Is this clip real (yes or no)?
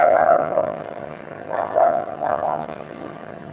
no